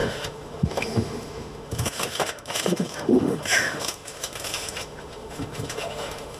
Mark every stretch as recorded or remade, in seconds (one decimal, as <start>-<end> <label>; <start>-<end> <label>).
0.0-6.4 remade